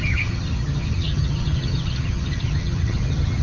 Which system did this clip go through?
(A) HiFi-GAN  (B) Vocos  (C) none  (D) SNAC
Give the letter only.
A